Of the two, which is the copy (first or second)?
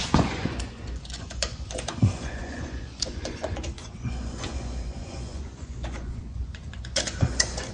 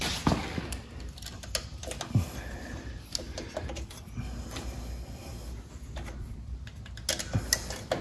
first